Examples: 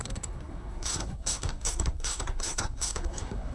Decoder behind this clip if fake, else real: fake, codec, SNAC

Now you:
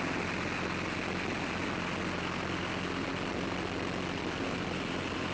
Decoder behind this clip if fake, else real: real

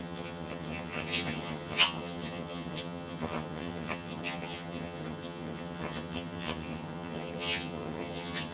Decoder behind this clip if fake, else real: fake, vocoder, HiFi-GAN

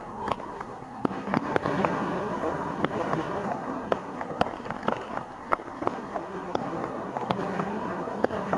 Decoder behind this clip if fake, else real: fake, codec, SNAC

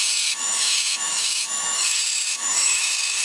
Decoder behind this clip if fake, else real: fake, autoencoder, DAC-VAE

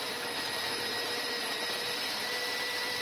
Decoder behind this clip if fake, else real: real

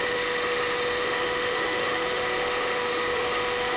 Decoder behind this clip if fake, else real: fake, autoencoder, DAC-VAE